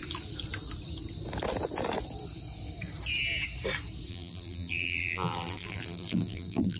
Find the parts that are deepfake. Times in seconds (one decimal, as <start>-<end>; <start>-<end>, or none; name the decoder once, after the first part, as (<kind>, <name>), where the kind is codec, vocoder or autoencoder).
4.1-6.8 (vocoder, BigVGAN v2)